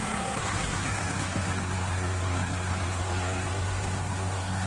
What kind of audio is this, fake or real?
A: fake